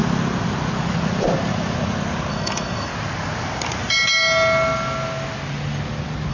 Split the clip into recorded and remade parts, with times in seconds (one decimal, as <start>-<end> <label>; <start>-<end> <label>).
0.0-2.3 recorded; 2.3-2.9 remade; 2.9-6.3 recorded